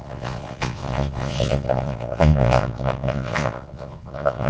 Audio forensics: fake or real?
fake